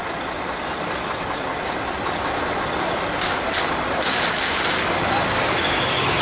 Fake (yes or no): no